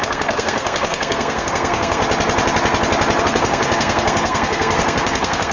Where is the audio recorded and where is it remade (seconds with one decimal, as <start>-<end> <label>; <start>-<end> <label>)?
0.0-2.0 remade; 2.0-3.2 recorded; 3.2-5.5 remade